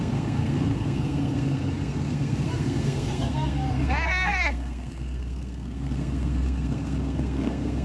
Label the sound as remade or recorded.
remade